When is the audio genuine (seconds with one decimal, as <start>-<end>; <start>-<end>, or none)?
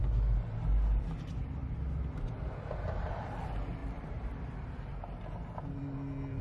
0.0-6.4